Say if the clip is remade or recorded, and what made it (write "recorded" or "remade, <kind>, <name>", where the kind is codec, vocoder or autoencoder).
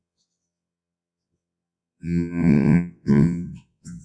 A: remade, vocoder, WaveNeXt